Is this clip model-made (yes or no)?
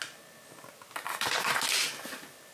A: no